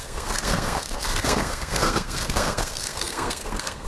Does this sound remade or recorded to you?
remade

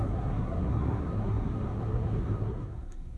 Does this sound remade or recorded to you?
remade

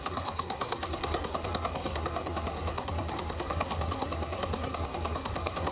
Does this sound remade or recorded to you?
remade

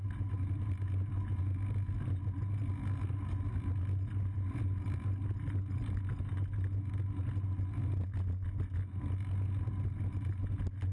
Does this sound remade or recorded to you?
recorded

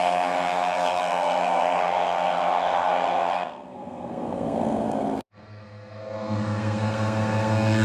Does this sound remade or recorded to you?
remade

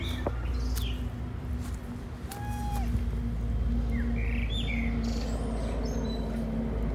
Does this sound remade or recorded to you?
recorded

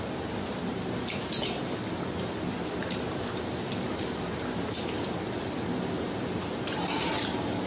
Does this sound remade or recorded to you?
recorded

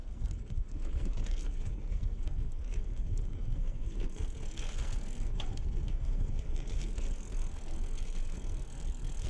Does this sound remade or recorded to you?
remade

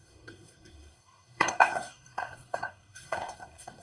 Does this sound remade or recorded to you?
remade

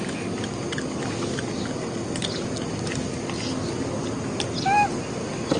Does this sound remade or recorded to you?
recorded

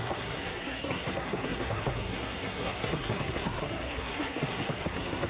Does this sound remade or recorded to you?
remade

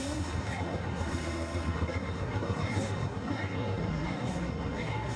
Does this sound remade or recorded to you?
remade